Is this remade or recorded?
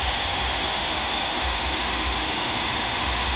remade